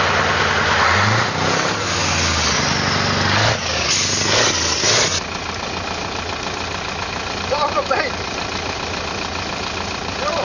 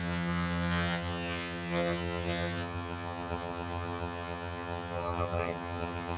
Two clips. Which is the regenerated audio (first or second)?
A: second